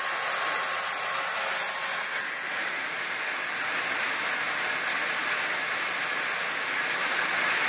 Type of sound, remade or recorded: recorded